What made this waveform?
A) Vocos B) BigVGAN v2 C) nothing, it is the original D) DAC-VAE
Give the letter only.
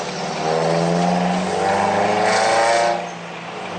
C